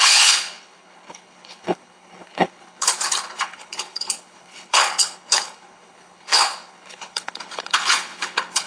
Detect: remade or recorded remade